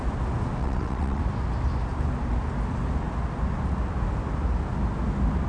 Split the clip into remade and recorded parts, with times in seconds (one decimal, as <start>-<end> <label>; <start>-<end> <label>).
0.0-0.6 recorded; 0.6-1.2 remade; 1.2-5.5 recorded